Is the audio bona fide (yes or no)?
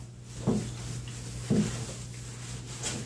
yes